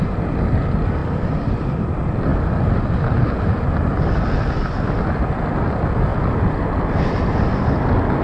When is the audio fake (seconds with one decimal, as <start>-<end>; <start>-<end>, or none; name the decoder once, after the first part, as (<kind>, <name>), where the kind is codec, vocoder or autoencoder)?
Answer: none